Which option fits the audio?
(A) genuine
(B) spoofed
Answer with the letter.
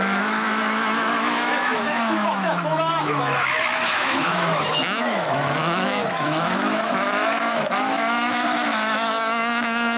B